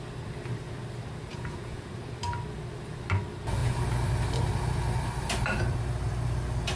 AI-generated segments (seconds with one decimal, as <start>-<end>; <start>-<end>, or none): 1.3-1.9